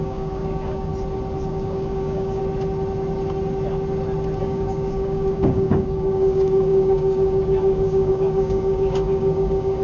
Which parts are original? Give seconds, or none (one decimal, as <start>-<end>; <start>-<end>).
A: 0.9-1.5; 2.4-4.4